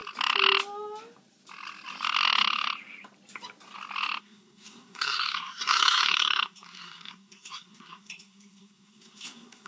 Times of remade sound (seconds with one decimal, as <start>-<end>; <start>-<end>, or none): 4.2-9.7